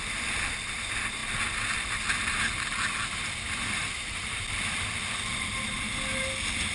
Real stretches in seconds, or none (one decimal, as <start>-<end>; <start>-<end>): 0.0-3.8; 4.4-6.7

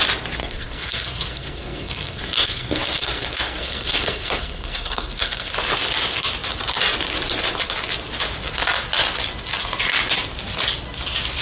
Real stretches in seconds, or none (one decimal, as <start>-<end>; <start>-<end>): 0.0-0.4; 5.5-11.4

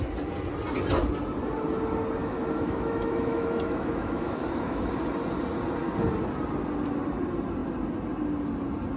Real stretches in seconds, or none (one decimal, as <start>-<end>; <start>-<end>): 0.0-2.2; 4.9-9.0

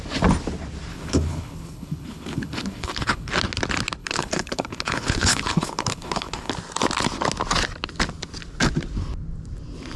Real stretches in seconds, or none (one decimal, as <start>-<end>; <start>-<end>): 0.0-0.9; 3.3-4.0; 6.5-10.0

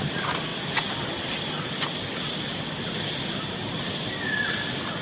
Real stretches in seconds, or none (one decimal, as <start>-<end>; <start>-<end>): 0.0-5.0

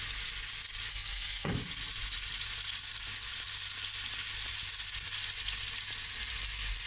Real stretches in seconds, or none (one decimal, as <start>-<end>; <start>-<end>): 0.0-0.9; 1.5-6.9

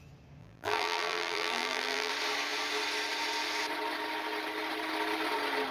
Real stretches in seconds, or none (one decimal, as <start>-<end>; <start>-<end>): 0.0-0.4; 2.1-5.7

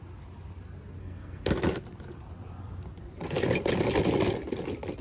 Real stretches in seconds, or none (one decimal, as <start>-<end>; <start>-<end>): 0.0-1.0; 1.5-5.0